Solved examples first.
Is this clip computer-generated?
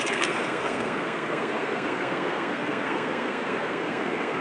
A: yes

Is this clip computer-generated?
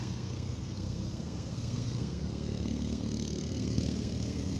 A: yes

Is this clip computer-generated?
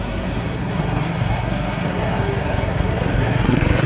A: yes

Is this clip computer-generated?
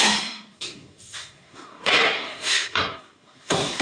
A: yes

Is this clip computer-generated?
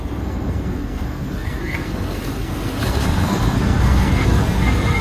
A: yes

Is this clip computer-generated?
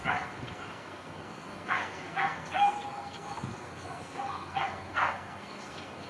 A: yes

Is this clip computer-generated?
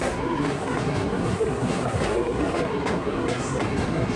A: yes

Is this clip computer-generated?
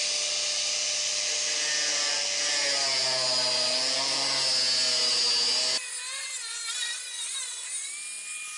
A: no